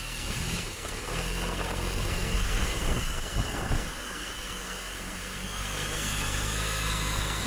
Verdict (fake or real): fake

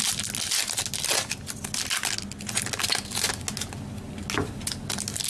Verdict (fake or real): real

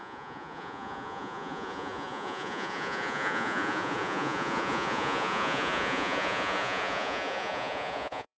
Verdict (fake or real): fake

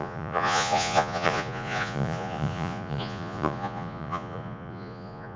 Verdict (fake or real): fake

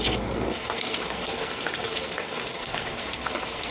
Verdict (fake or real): fake